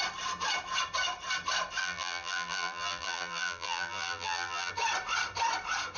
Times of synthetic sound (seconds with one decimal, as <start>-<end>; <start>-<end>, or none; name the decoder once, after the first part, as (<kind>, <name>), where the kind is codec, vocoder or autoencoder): 1.8-4.7 (vocoder, BigVGAN v2)